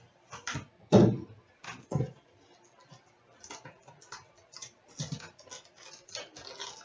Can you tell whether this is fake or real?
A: real